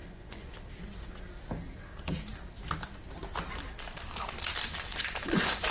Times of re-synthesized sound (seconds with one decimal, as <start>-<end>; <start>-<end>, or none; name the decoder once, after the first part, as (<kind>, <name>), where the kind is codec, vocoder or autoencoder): 0.0-0.5 (vocoder, Vocos); 4.9-5.7